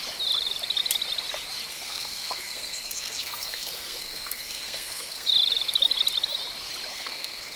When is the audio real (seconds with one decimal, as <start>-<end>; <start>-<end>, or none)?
0.0-1.7; 5.3-6.9